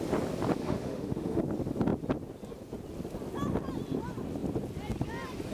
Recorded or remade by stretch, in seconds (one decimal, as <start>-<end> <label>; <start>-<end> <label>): 0.0-0.6 recorded; 0.6-1.4 remade; 1.4-5.5 recorded